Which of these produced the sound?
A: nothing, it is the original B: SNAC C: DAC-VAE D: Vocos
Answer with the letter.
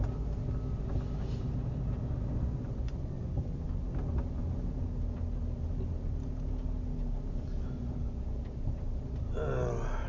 A